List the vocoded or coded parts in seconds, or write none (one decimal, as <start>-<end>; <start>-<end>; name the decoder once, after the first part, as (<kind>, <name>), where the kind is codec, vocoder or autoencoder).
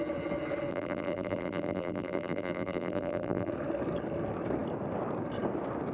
0.7-3.5 (vocoder, BigVGAN v2)